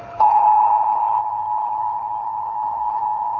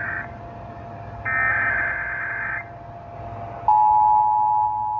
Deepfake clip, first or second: first